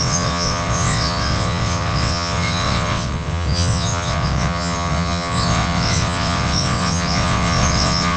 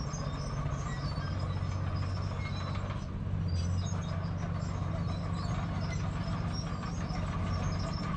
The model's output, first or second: first